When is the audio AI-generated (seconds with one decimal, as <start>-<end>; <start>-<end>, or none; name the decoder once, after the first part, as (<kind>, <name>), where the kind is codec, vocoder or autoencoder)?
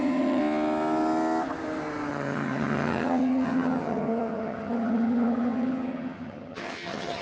0.0-0.4 (vocoder, HiFi-GAN); 2.1-7.2